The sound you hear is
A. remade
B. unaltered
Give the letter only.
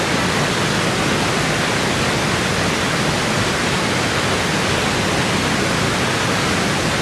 B